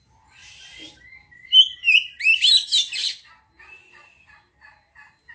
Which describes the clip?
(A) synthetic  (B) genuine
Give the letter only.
B